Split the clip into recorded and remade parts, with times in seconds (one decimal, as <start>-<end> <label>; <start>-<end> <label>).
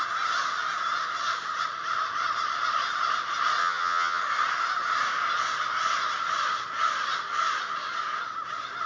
0.0-3.6 recorded; 3.6-4.2 remade; 4.2-8.9 recorded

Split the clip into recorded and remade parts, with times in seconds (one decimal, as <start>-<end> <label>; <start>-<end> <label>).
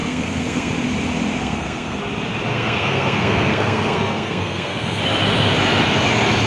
0.0-0.7 remade; 0.7-1.4 recorded; 1.4-2.0 remade; 2.0-2.5 recorded; 2.5-5.0 remade; 5.0-6.5 recorded